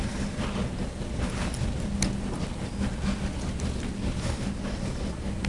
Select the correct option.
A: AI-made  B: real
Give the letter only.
B